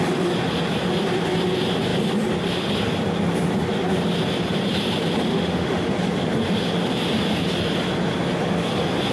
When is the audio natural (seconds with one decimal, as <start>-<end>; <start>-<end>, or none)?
0.0-5.3; 5.9-9.1